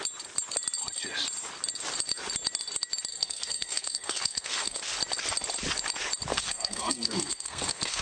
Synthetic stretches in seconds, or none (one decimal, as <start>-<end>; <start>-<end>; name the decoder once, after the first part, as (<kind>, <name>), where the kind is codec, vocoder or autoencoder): 3.1-4.8 (codec, SNAC); 6.3-8.0